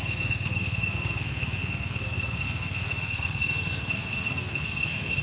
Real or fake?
fake